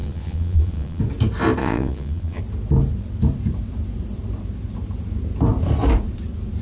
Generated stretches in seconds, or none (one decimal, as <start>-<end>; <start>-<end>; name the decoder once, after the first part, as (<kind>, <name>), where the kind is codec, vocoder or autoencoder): 0.0-1.0 (vocoder, Vocos); 1.6-2.4